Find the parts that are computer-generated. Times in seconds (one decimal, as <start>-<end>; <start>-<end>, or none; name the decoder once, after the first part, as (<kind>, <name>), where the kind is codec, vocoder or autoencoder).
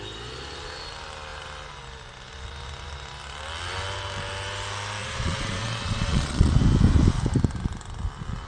5.0-6.5 (vocoder, Vocos)